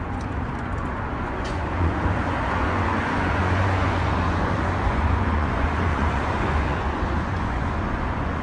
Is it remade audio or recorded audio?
remade